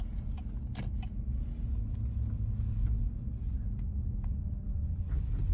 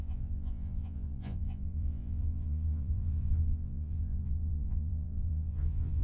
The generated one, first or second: second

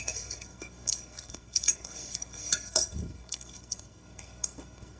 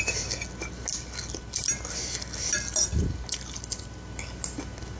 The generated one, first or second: first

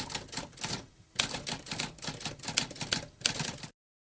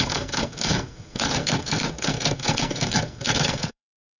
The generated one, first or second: second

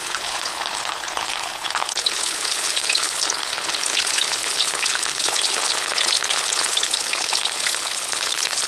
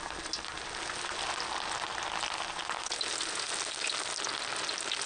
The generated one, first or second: first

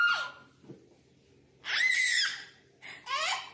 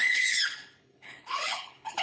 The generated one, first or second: second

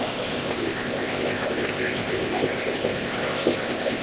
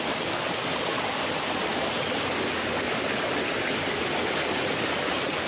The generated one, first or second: first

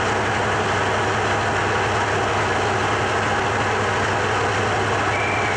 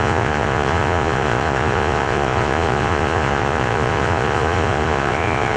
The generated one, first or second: second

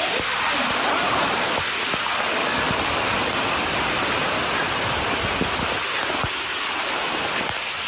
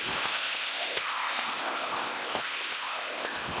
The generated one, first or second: second